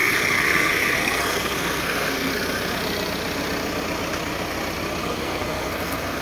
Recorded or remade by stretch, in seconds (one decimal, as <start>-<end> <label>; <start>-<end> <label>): 0.0-2.3 remade; 2.3-5.0 recorded; 5.0-6.2 remade